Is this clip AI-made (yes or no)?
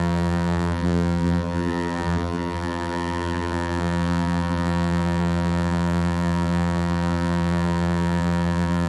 yes